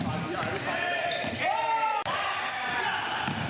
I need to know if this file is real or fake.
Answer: fake